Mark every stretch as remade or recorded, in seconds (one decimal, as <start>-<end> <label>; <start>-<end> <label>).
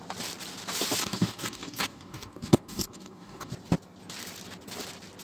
0.0-1.0 recorded; 1.0-3.5 remade; 3.5-5.2 recorded